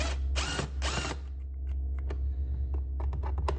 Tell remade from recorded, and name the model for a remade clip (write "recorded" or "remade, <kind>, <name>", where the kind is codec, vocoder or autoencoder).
recorded